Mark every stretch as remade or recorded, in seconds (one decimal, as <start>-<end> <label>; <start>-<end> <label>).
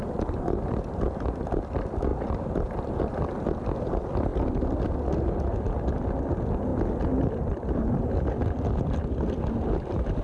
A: 0.0-2.1 recorded; 2.1-2.8 remade; 2.8-10.2 recorded